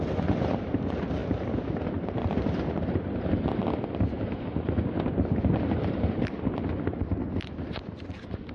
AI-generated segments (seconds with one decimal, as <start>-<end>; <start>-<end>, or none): none